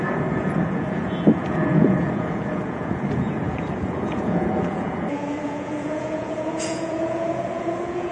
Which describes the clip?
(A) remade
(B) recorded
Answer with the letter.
A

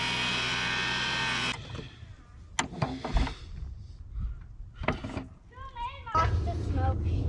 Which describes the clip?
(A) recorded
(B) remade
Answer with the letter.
A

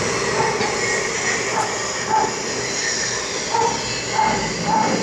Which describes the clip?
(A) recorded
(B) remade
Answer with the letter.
B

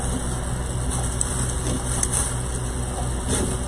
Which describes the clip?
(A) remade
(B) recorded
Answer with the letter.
B